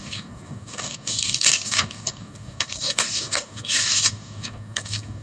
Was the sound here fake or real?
fake